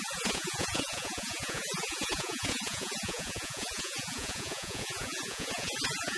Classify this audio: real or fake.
fake